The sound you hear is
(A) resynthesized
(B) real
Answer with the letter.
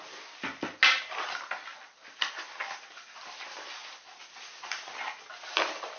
B